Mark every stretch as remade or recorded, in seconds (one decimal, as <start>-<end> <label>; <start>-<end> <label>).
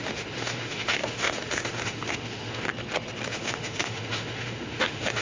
0.0-2.7 remade; 2.7-3.3 recorded; 3.3-5.2 remade